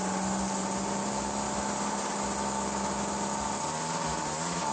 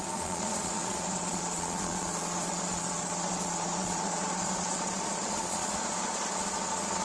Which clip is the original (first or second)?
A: first